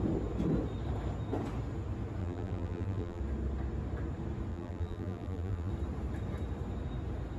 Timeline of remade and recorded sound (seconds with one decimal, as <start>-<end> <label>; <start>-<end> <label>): 0.0-2.2 recorded; 2.2-3.2 remade; 3.2-4.5 recorded; 4.5-5.7 remade; 5.7-7.4 recorded